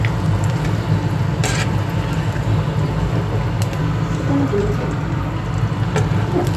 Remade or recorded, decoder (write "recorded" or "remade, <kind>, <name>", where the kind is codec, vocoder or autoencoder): recorded